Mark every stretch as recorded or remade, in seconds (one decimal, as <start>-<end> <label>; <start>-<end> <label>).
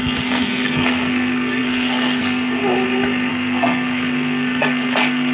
0.0-2.6 remade; 2.6-3.3 recorded; 3.3-5.3 remade